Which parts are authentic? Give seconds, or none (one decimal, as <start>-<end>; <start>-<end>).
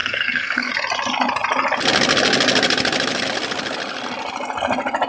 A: 0.7-5.1